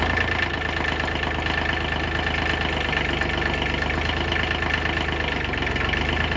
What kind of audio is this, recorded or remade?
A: recorded